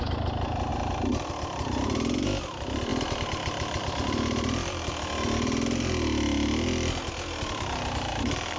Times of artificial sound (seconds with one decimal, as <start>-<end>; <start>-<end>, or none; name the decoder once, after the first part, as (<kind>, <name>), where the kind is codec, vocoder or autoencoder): none